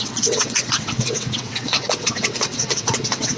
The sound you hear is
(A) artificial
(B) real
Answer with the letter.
A